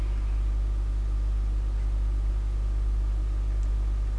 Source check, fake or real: real